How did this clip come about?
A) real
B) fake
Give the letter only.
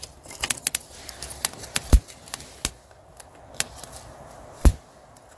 A